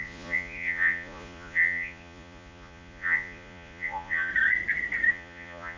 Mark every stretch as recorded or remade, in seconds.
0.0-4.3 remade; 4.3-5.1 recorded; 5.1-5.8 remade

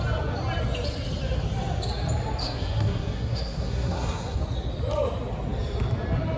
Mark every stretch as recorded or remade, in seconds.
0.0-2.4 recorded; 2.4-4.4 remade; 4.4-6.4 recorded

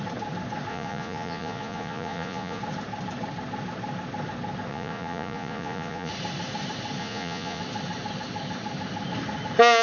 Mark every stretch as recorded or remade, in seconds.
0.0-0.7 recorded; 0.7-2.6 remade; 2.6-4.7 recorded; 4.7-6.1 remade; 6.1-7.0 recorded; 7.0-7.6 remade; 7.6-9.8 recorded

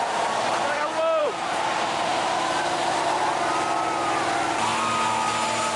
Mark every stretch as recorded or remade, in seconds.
0.0-1.2 recorded; 1.2-3.1 remade; 3.1-5.8 recorded

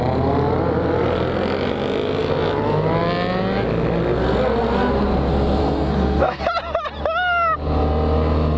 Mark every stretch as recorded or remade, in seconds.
0.0-5.6 recorded; 5.6-6.4 remade; 6.4-8.6 recorded

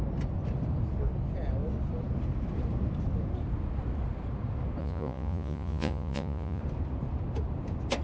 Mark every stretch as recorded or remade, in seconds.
0.0-4.8 recorded; 4.8-6.6 remade; 6.6-8.0 recorded

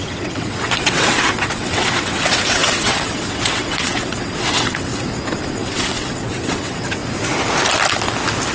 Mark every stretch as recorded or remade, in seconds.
0.0-4.9 remade; 4.9-5.6 recorded; 5.6-7.0 remade; 7.0-8.5 recorded